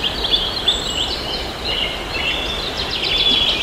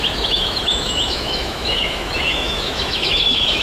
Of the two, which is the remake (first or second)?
second